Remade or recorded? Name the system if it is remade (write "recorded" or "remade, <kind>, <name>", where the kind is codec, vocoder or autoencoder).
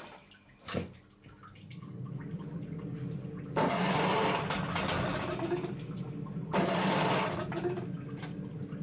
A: recorded